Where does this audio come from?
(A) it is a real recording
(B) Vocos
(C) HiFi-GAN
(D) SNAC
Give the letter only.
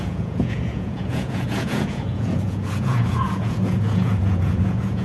B